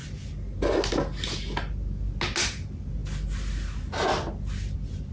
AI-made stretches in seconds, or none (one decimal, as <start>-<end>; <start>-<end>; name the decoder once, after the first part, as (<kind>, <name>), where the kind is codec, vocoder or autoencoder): none

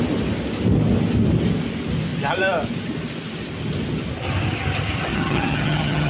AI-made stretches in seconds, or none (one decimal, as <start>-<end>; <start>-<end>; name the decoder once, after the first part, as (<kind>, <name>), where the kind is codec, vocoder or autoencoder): 5.1-6.1 (vocoder, HiFi-GAN)

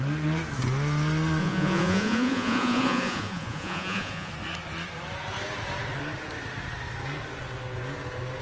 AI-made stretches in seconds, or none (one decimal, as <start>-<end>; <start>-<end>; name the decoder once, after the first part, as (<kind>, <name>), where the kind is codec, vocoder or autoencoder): 1.4-4.3 (vocoder, Vocos)

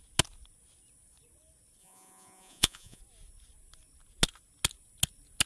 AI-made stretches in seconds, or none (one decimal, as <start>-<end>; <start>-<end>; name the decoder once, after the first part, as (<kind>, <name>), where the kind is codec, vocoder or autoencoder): 1.8-3.0 (vocoder, Vocos)

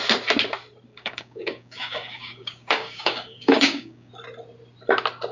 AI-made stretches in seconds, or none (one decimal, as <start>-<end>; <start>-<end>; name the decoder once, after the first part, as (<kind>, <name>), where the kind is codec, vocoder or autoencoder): 0.9-4.1 (codec, DAC)

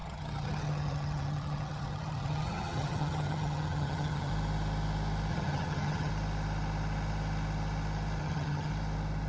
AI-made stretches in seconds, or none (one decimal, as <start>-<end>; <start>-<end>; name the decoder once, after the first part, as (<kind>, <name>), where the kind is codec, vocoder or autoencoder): 0.0-4.3 (vocoder, HiFi-GAN); 5.3-6.1; 8.2-8.7